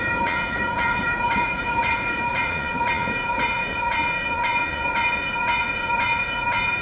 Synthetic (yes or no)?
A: yes